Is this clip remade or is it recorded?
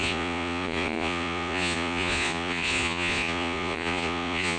remade